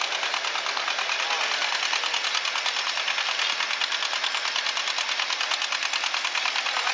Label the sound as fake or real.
real